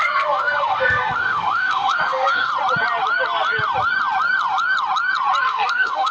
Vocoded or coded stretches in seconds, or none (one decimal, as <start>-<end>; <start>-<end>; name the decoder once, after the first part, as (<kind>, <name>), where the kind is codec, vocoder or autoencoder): 0.0-2.5 (codec, SNAC); 5.4-6.1